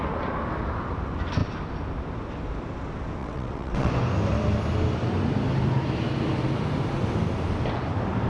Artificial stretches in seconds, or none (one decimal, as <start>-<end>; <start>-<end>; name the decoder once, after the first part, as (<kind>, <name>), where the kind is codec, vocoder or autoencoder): 3.2-3.9 (vocoder, WaveNeXt)